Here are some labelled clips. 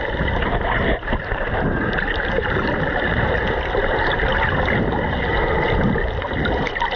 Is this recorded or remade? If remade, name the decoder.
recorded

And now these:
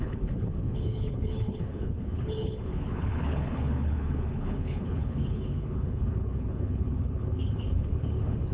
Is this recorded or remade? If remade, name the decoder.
remade, codec, HILCodec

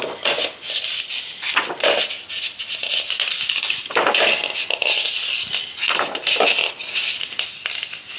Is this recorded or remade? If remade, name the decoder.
recorded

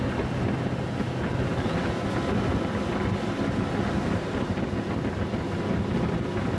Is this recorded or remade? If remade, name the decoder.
recorded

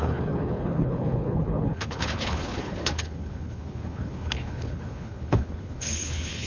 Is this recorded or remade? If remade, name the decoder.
remade, codec, HILCodec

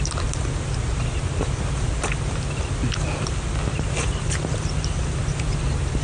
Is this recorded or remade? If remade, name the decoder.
recorded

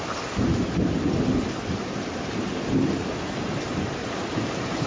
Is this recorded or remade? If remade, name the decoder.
recorded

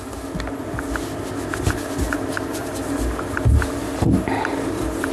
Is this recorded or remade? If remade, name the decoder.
recorded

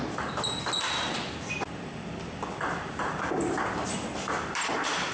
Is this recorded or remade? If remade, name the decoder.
recorded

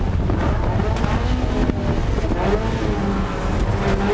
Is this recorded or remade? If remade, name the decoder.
recorded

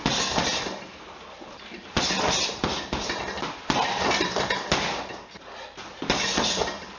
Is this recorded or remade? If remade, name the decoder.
recorded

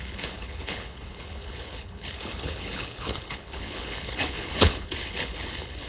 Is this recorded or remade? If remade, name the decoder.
remade, codec, HILCodec